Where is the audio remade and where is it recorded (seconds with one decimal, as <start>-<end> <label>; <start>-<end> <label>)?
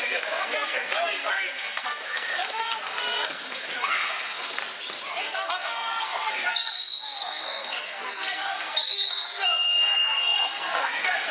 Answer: 0.0-4.6 remade; 4.6-5.2 recorded; 5.2-11.3 remade